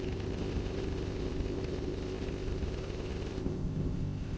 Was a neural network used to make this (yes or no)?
yes